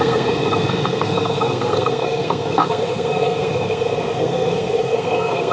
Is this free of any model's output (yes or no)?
no